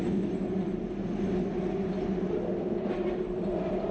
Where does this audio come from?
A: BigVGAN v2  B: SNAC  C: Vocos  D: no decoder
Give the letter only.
D